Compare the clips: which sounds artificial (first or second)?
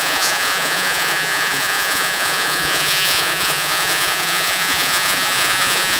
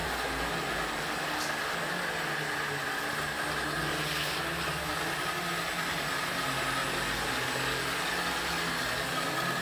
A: first